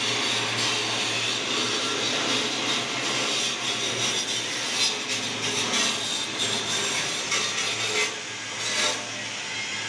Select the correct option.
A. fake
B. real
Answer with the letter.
B